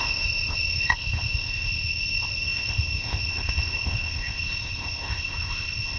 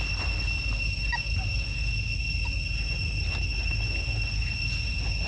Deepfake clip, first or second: first